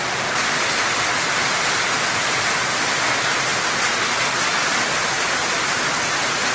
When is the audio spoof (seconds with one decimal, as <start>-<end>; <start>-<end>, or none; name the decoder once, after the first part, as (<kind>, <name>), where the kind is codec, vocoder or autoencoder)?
none